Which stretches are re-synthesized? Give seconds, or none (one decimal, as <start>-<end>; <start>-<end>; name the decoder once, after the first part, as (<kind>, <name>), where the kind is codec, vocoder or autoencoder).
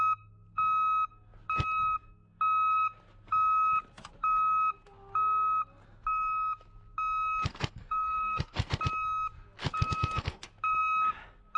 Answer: 7.5-8.7 (codec, SNAC); 9.6-10.4